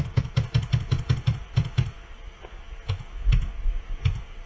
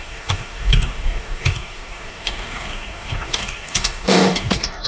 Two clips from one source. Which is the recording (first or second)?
first